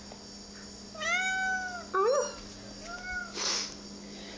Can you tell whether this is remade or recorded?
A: recorded